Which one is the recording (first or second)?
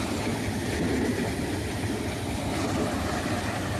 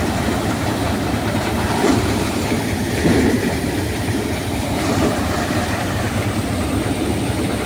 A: first